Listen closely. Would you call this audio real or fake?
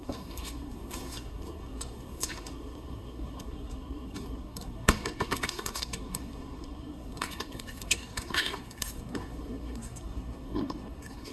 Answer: fake